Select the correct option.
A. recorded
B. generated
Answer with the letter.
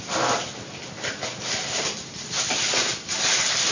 A